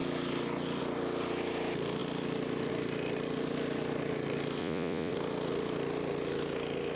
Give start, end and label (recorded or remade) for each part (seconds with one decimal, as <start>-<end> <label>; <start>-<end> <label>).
0.0-4.6 recorded; 4.6-5.1 remade; 5.1-7.0 recorded